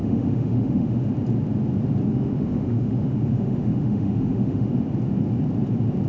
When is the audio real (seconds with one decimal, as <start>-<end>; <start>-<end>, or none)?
1.1-2.1; 4.7-6.1